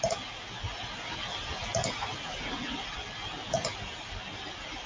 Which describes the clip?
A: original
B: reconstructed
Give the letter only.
A